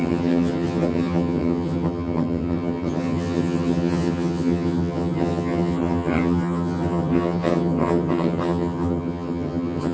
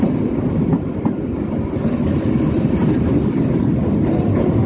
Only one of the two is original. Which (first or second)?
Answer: second